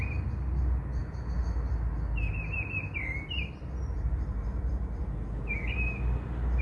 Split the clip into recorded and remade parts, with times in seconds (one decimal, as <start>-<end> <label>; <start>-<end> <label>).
0.0-6.6 recorded